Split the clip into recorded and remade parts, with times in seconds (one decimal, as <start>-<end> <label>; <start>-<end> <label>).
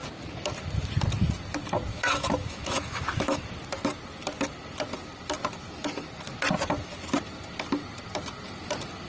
0.0-1.9 recorded; 1.9-3.4 remade; 3.4-9.1 recorded